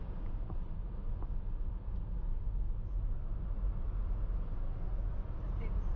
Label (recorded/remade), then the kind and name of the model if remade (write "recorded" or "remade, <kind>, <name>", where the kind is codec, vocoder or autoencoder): recorded